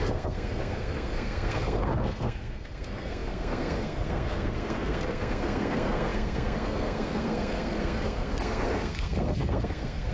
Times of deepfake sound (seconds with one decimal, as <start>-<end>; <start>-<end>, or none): 0.0-10.1